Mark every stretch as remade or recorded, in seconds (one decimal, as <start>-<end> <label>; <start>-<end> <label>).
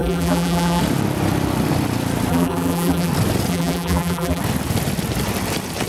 0.0-0.8 remade; 0.8-2.3 recorded; 2.3-3.1 remade; 3.1-3.5 recorded; 3.5-4.4 remade; 4.4-5.9 recorded